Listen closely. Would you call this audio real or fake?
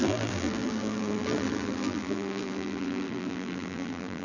fake